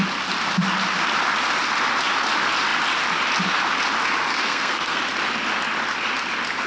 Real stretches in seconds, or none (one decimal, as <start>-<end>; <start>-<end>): 0.0-4.3; 5.0-6.7